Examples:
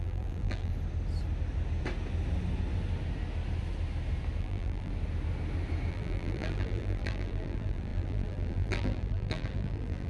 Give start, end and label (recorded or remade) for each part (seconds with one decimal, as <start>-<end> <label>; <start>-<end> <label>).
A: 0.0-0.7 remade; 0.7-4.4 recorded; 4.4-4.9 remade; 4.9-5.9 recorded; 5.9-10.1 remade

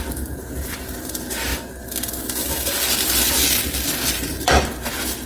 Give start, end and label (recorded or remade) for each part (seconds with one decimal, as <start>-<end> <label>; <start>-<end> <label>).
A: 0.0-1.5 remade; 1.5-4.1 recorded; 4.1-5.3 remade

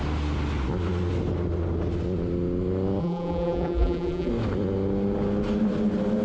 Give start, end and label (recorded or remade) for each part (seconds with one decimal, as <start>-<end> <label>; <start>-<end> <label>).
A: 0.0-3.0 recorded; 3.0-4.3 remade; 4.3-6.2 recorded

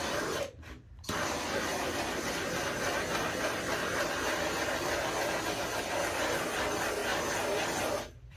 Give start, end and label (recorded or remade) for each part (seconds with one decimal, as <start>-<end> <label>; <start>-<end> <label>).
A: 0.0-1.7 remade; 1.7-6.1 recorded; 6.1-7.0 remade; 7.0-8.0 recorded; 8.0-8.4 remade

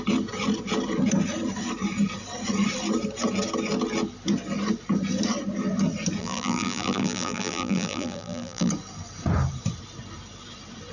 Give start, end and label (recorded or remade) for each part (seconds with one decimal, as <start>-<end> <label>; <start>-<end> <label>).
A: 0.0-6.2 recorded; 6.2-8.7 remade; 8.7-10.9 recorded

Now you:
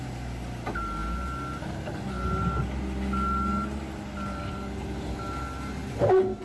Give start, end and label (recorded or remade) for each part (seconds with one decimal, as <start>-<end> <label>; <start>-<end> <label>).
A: 0.0-6.4 recorded